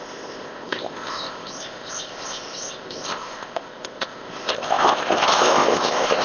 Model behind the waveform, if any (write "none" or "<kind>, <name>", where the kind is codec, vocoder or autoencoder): codec, ZipCodec